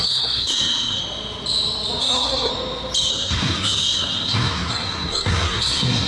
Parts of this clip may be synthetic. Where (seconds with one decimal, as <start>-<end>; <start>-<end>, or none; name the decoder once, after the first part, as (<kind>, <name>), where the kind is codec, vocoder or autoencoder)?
0.0-1.0 (codec, SNAC); 2.0-2.5; 3.1-6.1